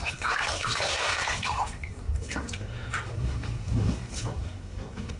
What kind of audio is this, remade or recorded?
remade